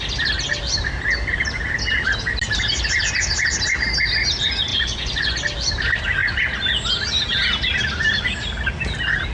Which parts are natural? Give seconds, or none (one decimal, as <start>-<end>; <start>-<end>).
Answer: 0.0-4.7; 5.4-9.3